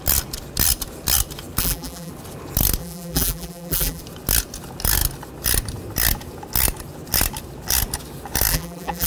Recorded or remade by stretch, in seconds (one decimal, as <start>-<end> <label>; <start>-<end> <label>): 0.0-1.6 recorded; 1.6-2.1 remade; 2.1-2.8 recorded; 2.8-4.0 remade; 4.0-8.5 recorded; 8.5-9.1 remade